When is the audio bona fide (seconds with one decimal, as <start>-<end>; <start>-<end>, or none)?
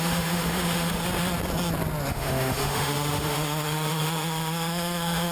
1.0-2.1